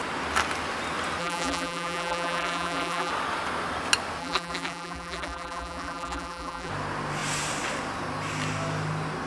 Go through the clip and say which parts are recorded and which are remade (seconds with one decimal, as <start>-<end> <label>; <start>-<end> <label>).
0.0-1.2 recorded; 1.2-3.1 remade; 3.1-4.2 recorded; 4.2-6.7 remade; 6.7-9.3 recorded